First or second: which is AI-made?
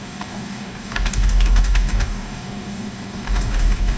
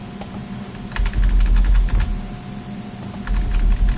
first